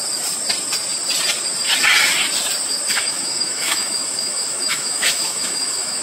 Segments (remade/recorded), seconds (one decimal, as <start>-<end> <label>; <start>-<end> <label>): 0.0-2.9 recorded; 2.9-6.0 remade